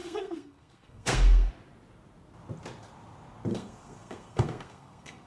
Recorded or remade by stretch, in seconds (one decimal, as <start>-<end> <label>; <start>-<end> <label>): 0.0-1.5 remade; 1.5-3.5 recorded; 3.5-5.3 remade